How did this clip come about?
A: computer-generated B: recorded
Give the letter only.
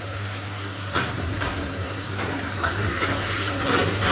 A